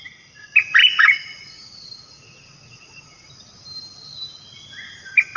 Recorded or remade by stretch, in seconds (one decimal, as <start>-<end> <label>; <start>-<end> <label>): 0.0-0.8 recorded; 0.8-3.3 remade; 3.3-5.4 recorded